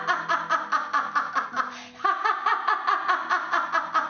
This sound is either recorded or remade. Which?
recorded